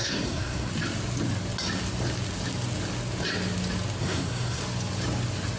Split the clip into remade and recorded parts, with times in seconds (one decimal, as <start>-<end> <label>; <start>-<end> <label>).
0.0-0.7 remade; 0.7-4.0 recorded; 4.0-4.6 remade; 4.6-5.6 recorded